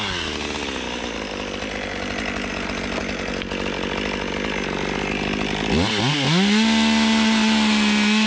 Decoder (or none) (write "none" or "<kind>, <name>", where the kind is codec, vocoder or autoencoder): none